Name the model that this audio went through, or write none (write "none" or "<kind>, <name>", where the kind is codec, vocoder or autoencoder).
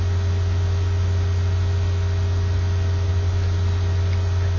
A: none